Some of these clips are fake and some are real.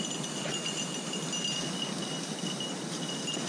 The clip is real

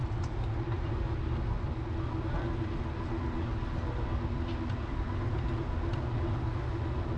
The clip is real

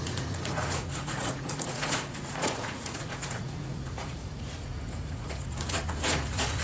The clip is fake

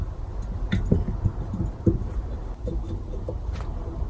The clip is real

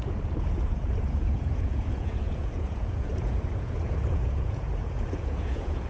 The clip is fake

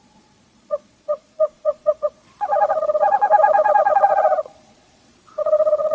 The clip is fake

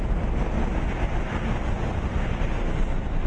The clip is real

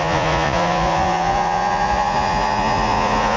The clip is fake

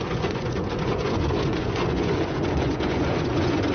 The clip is fake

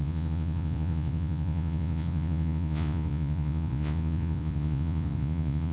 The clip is fake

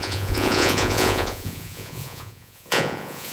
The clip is fake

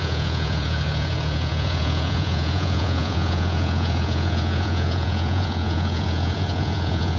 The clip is fake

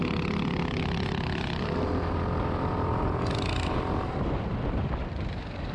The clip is real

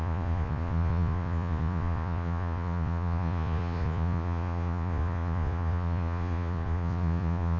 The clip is fake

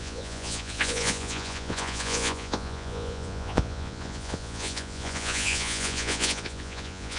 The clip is fake